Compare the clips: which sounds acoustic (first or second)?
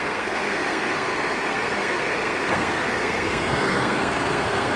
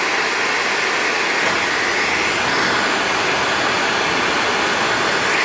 second